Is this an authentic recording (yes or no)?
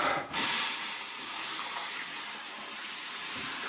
no